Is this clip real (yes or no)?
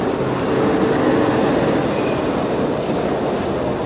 yes